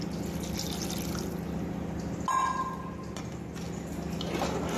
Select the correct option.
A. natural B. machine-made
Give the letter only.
A